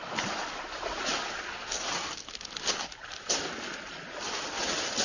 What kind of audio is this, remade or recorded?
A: recorded